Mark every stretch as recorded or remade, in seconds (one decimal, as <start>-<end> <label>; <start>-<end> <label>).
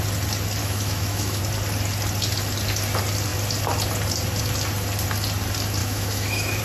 0.0-0.6 recorded; 0.6-1.4 remade; 1.4-5.8 recorded; 5.8-6.6 remade